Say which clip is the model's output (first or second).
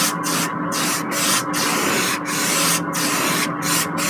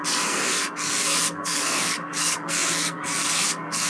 second